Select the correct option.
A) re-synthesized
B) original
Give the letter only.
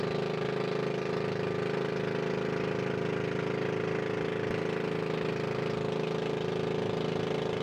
B